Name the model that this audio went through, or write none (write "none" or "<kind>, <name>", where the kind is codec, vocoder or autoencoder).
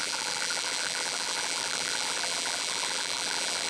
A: vocoder, BigVGAN v2